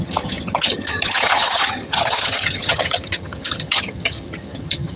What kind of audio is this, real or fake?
fake